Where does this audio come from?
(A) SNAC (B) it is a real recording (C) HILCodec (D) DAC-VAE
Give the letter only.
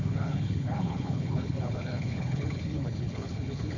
C